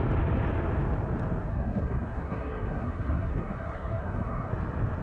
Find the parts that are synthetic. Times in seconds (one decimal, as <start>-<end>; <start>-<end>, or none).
1.5-4.5

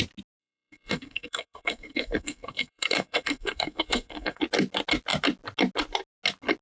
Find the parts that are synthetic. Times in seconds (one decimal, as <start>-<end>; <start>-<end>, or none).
0.4-4.4

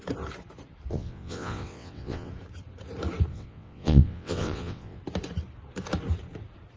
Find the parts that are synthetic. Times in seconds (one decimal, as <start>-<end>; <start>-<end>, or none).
0.9-2.3; 3.3-5.0

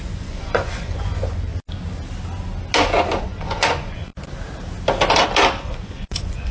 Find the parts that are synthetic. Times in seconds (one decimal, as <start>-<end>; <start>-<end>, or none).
0.0-1.5; 3.2-4.1; 5.6-6.5

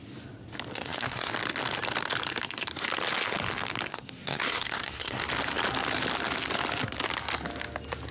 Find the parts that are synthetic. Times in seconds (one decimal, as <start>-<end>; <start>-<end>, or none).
0.7-1.3; 3.9-5.2

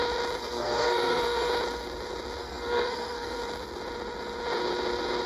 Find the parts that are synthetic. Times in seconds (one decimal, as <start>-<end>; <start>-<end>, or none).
0.4-1.5; 2.4-3.4

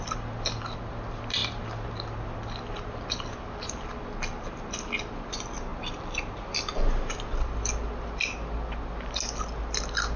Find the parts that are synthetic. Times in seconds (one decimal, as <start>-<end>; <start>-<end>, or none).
none

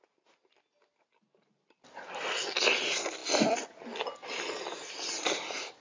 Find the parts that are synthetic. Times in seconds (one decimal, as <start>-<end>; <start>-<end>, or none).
none